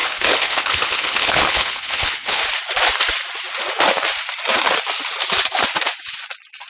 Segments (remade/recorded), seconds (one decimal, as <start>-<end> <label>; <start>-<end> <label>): 0.0-2.4 remade; 2.4-6.7 recorded